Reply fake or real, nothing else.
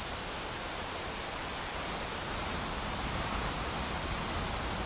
real